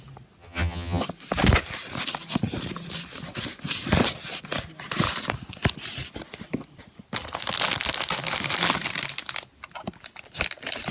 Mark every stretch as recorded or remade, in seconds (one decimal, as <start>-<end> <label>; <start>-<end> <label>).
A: 0.0-0.4 recorded; 0.4-1.0 remade; 1.0-10.9 recorded